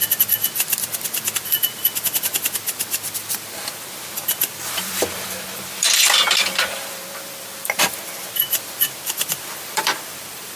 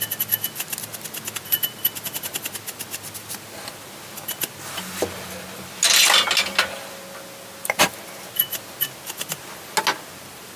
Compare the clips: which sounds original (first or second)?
second